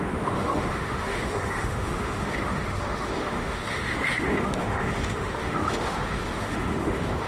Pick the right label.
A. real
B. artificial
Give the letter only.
B